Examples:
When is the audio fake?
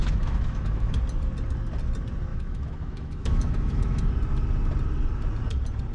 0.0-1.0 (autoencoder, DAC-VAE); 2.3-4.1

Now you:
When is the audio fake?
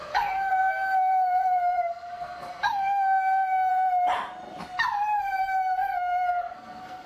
0.0-3.7 (codec, SNAC); 5.2-7.1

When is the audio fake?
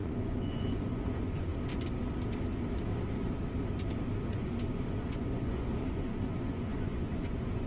0.0-1.5 (vocoder, Vocos); 4.3-7.7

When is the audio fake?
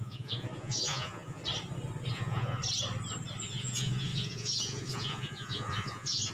0.0-1.4 (vocoder, Vocos); 2.1-2.6; 3.4-6.3